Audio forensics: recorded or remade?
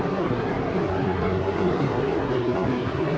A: remade